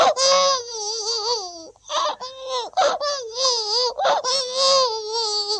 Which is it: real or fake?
real